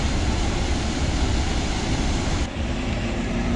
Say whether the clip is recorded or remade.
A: recorded